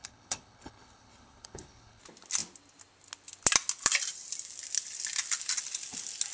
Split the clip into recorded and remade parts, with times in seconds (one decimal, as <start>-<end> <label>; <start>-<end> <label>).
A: 0.0-2.0 remade; 2.0-6.3 recorded